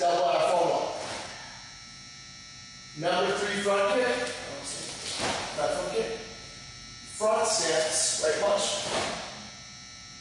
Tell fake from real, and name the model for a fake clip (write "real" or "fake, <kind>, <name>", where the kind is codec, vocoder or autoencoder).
real